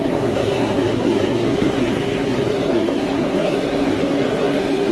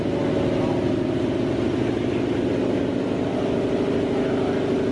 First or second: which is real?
second